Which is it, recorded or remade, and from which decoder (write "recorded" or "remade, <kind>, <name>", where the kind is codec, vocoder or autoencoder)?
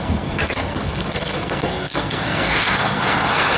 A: remade, codec, SNAC